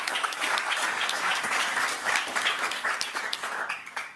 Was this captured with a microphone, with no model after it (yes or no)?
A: no